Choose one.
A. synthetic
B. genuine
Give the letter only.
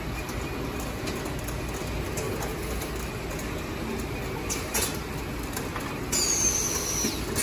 B